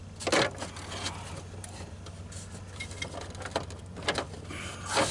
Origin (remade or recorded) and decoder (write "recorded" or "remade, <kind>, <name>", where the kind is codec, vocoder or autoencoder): recorded